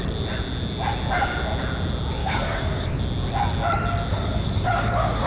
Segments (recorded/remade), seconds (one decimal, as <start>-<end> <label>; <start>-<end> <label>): 0.0-2.2 recorded; 2.2-3.0 remade; 3.0-4.1 recorded; 4.1-5.3 remade